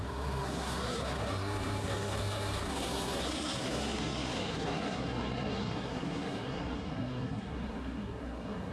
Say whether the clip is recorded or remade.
remade